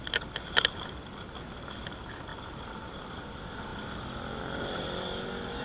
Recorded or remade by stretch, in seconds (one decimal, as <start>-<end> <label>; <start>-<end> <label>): 0.0-2.3 recorded; 2.3-3.2 remade; 3.2-5.6 recorded